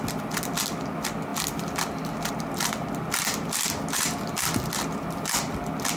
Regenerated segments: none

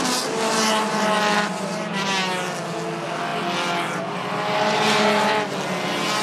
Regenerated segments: none

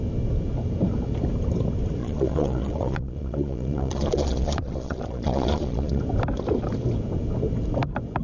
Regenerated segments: 2.0-6.0 (vocoder, Vocos)